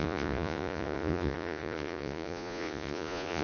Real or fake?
fake